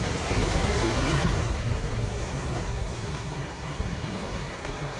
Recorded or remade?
remade